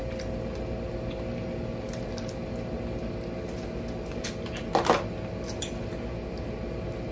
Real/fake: real